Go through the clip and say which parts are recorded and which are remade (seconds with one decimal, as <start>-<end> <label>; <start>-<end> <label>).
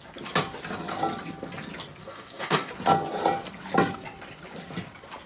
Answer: 0.0-2.0 recorded; 2.0-2.7 remade; 2.7-5.3 recorded